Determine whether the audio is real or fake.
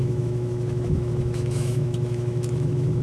fake